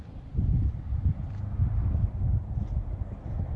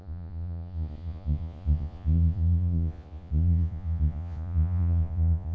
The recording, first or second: first